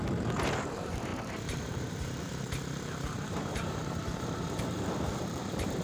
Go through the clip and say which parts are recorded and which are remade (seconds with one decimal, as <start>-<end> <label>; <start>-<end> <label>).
0.0-5.8 remade